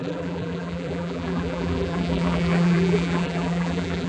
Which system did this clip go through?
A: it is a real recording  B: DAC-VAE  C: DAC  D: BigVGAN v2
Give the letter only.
D